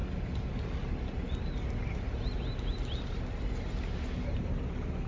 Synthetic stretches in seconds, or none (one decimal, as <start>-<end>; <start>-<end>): none